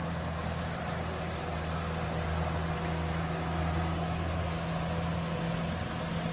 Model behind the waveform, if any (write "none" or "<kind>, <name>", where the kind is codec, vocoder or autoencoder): none